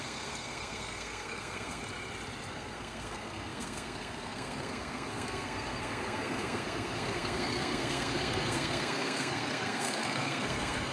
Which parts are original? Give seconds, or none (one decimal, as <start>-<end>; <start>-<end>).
1.8-2.5